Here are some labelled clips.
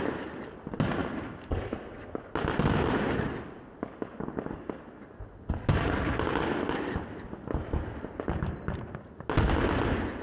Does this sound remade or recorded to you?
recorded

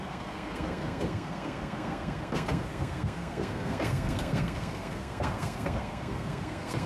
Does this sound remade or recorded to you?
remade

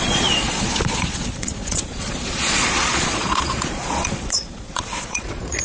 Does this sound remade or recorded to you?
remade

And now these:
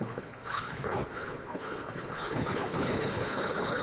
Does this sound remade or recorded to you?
remade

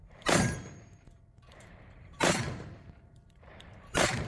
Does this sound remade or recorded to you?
remade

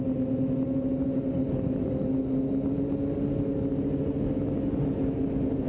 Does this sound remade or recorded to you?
recorded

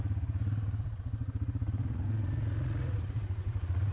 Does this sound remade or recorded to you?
remade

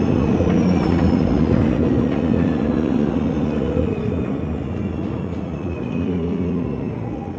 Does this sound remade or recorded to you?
remade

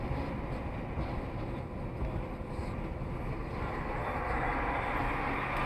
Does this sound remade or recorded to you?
recorded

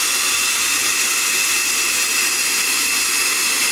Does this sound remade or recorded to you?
recorded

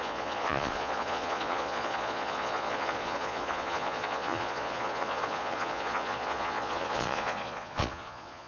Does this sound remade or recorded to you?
remade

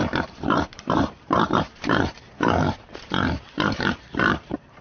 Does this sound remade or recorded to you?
remade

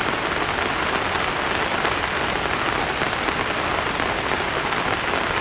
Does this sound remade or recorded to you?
recorded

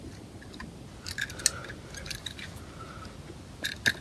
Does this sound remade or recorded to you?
recorded